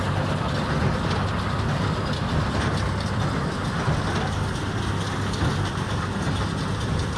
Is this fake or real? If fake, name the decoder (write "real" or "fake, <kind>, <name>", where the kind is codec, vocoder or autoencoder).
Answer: real